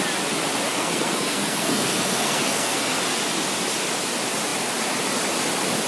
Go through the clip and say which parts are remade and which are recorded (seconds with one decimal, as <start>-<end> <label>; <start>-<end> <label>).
0.0-0.7 recorded; 0.7-3.0 remade; 3.0-5.9 recorded